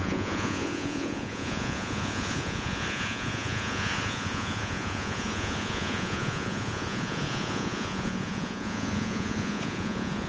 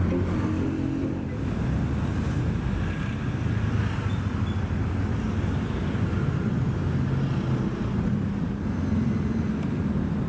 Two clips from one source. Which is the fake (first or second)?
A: first